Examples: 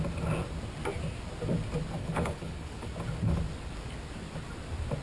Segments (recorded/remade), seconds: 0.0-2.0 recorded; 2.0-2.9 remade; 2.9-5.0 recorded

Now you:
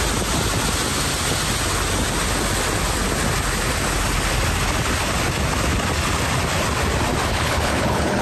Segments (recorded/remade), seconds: 0.0-7.3 recorded; 7.3-8.2 remade

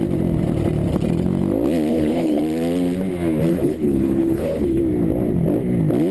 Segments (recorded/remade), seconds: 0.0-1.9 recorded; 1.9-2.4 remade; 2.4-3.5 recorded; 3.5-4.8 remade; 4.8-6.1 recorded

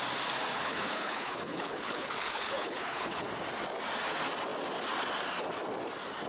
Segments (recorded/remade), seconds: 0.0-0.5 recorded; 0.5-3.3 remade; 3.3-6.3 recorded

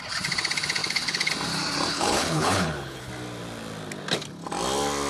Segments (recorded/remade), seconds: 0.0-0.8 recorded; 0.8-1.3 remade; 1.3-1.9 recorded; 1.9-3.1 remade; 3.1-5.1 recorded